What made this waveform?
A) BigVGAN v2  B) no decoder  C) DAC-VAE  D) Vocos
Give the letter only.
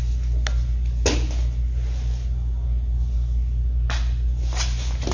B